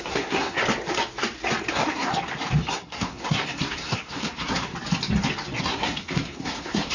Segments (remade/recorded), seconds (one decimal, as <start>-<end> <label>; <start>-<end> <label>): 0.0-0.6 remade; 0.6-1.7 recorded; 1.7-2.1 remade; 2.1-2.7 recorded; 2.7-4.7 remade; 4.7-5.6 recorded; 5.6-6.9 remade